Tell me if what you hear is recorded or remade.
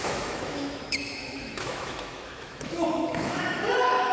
remade